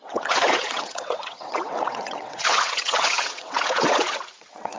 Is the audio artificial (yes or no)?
yes